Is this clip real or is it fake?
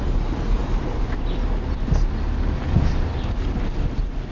real